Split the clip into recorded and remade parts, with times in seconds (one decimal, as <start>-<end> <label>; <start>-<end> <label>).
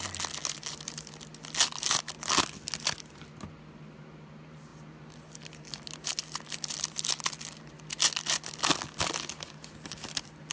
0.0-10.5 recorded